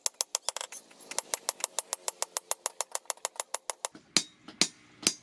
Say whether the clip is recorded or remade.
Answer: recorded